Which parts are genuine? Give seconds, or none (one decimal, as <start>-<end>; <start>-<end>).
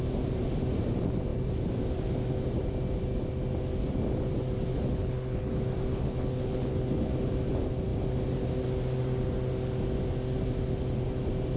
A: 0.0-4.7; 5.5-5.9; 7.1-11.6